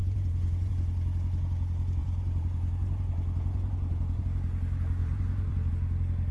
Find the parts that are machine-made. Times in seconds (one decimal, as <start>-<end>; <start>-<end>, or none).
0.0-0.7; 2.0-4.2; 5.0-5.7